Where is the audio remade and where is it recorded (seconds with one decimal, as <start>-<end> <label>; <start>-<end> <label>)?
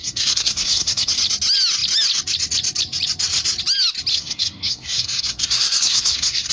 0.0-1.1 remade; 1.1-4.1 recorded; 4.1-6.5 remade